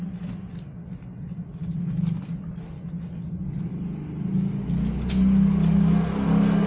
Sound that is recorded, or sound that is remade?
recorded